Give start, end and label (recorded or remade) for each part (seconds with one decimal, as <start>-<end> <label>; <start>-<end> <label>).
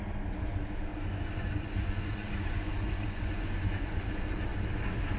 0.0-0.9 recorded; 0.9-4.0 remade; 4.0-5.2 recorded